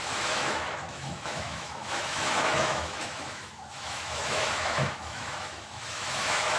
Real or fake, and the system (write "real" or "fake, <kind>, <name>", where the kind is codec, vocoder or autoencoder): fake, autoencoder, DAC-VAE